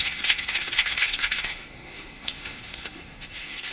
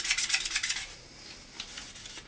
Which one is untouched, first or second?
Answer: second